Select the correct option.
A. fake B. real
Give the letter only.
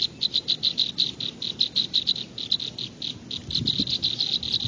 B